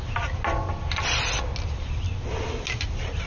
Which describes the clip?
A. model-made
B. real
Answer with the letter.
B